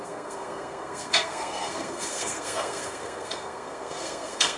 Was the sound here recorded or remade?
remade